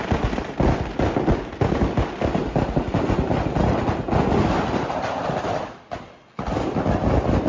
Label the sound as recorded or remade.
recorded